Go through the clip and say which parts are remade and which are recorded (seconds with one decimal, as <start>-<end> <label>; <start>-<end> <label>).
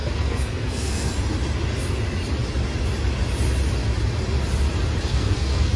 0.0-1.1 remade; 1.1-5.1 recorded; 5.1-5.8 remade